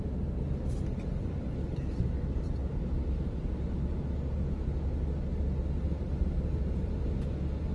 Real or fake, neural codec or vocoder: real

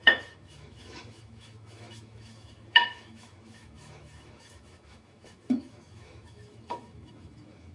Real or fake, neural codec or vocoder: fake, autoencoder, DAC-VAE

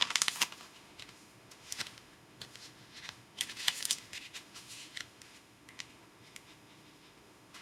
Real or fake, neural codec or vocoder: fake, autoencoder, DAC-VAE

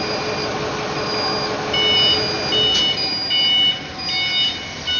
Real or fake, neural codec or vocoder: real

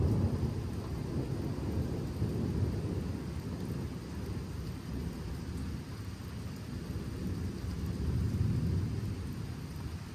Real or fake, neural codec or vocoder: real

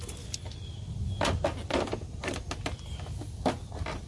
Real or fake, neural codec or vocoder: real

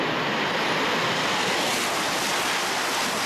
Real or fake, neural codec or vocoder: real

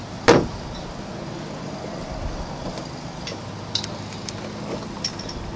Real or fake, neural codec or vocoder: real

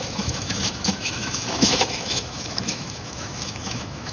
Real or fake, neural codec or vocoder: fake, autoencoder, DAC-VAE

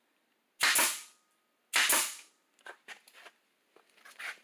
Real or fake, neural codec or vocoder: real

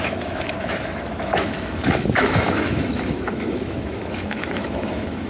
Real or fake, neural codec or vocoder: fake, autoencoder, DAC-VAE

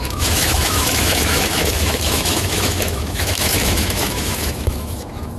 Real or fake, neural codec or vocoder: fake, autoencoder, DAC-VAE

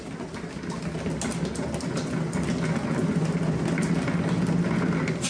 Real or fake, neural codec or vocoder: real